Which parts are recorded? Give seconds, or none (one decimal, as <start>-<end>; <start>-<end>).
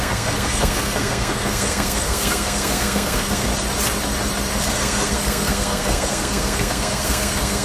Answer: 3.5-4.6